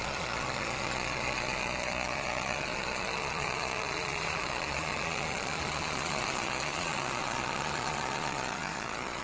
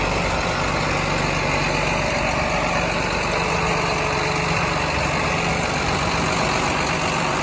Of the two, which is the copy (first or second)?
first